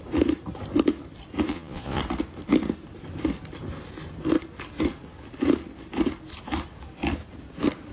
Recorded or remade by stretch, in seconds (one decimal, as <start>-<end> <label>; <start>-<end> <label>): 0.0-1.5 recorded; 1.5-2.0 remade; 2.0-7.9 recorded

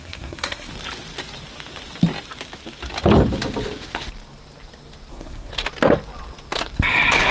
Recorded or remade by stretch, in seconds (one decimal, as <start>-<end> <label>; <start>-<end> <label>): 0.0-0.7 remade; 0.7-5.1 recorded; 5.1-5.5 remade; 5.5-7.3 recorded

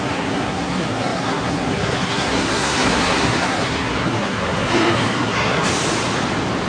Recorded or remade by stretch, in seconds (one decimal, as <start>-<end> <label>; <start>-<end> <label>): 0.0-5.7 remade; 5.7-6.7 recorded

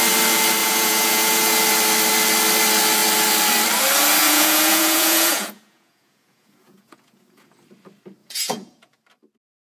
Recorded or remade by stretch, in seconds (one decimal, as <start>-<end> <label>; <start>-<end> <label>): 0.0-0.6 recorded; 0.6-1.6 remade; 1.6-4.2 recorded; 4.2-7.5 remade; 7.5-8.2 recorded; 8.2-9.0 remade; 9.0-9.7 recorded

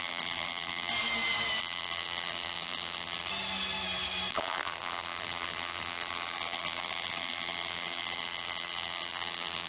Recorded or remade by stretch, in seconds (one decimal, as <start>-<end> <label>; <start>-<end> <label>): 0.0-0.9 remade; 0.9-1.6 recorded; 1.6-3.3 remade; 3.3-4.3 recorded; 4.3-9.7 remade

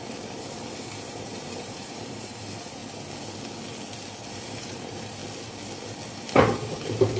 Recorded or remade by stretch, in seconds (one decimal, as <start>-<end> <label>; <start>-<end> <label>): 0.0-2.8 remade; 2.8-4.3 recorded; 4.3-5.2 remade; 5.2-6.1 recorded; 6.1-7.2 remade

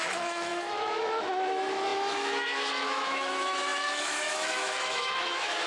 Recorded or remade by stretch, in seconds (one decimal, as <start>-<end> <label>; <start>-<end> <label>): 0.0-5.7 remade

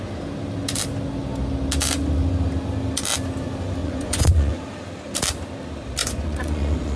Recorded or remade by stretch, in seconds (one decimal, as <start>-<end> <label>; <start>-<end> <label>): 0.0-3.8 recorded; 3.8-4.6 remade; 4.6-6.0 recorded; 6.0-7.0 remade